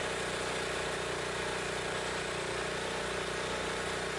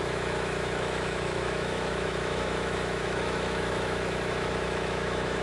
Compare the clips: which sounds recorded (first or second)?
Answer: first